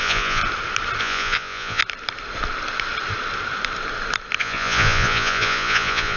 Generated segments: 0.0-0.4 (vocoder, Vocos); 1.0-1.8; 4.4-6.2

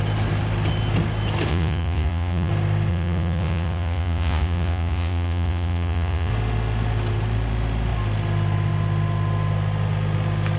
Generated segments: 1.5-2.5 (vocoder, Vocos); 2.9-6.3